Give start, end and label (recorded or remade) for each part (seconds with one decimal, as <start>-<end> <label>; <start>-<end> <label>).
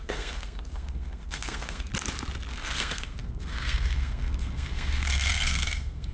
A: 0.0-1.9 remade; 1.9-2.5 recorded; 2.5-6.1 remade